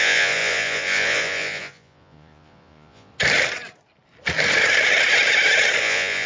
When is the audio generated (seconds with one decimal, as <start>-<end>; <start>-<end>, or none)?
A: 0.0-3.1; 5.8-6.3